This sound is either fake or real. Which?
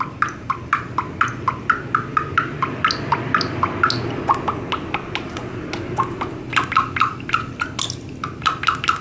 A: real